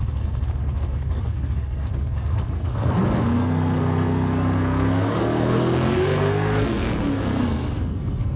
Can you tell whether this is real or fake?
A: fake